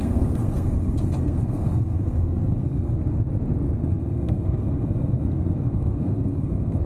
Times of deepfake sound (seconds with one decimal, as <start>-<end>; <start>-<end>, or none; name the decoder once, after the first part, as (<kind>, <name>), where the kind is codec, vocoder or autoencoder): 0.0-3.0 (codec, SNAC); 3.8-6.9